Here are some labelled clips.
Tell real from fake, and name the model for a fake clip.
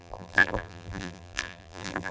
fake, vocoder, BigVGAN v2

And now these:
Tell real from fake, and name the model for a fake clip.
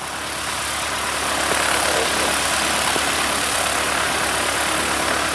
real